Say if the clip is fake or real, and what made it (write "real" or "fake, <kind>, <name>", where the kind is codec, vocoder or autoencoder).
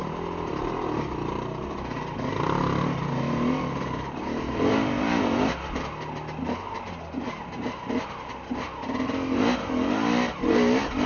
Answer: real